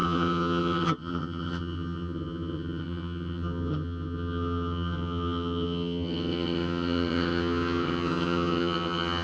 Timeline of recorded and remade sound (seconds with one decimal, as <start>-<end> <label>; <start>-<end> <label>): 0.0-9.2 remade